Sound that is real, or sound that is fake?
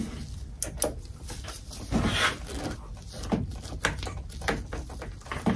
real